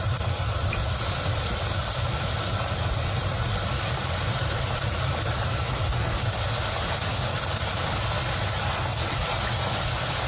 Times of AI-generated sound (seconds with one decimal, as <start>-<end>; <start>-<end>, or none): 3.2-5.5